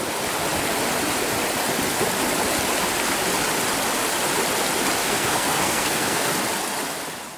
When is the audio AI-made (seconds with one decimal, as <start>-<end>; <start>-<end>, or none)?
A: 5.0-6.3